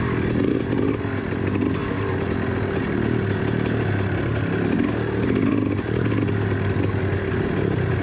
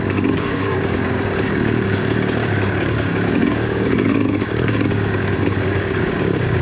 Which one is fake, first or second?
second